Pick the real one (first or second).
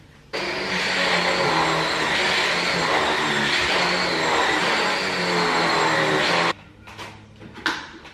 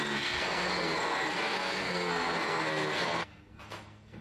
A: first